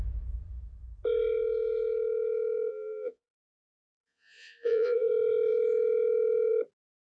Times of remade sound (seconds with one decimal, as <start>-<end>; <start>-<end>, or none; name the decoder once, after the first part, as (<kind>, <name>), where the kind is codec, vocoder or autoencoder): 2.7-5.1 (vocoder, Vocos)